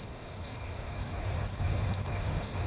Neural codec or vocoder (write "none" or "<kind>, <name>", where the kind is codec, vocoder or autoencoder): autoencoder, DAC-VAE